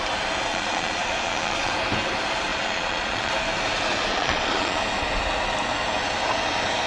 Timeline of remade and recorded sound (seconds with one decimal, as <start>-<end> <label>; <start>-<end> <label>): 0.0-0.5 recorded; 0.5-1.7 remade; 1.7-2.5 recorded; 2.5-3.3 remade; 3.3-4.1 recorded; 4.1-4.8 remade; 4.8-6.9 recorded